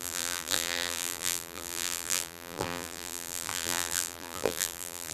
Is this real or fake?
fake